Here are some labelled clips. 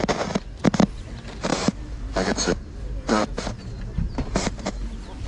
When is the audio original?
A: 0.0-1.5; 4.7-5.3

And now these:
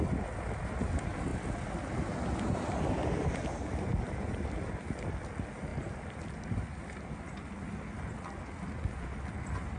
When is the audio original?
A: 0.0-5.7; 8.4-9.8

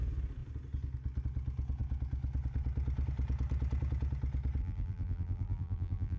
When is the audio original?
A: 0.0-4.6

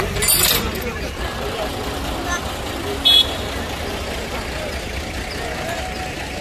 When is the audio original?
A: 0.0-1.7; 5.5-6.4

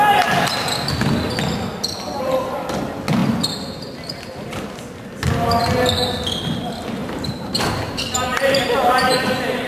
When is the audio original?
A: 0.0-7.0; 7.6-8.3; 9.1-9.7

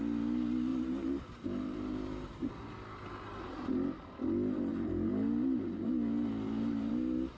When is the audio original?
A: 0.0-0.7; 2.5-4.7; 6.9-7.4